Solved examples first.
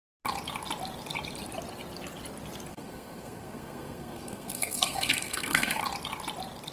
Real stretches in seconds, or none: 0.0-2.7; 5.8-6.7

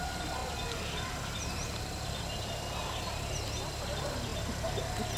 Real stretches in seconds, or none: 0.0-5.2

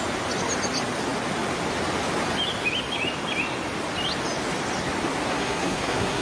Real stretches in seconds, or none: 0.0-5.3

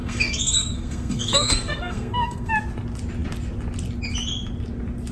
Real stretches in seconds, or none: 2.5-5.1